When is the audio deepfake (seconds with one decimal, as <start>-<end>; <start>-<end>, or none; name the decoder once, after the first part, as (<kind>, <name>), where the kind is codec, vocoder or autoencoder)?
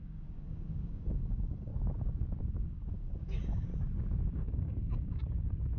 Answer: 0.0-1.7 (codec, DAC); 2.4-3.7; 4.3-5.8